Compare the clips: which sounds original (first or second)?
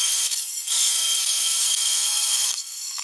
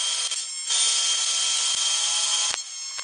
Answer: second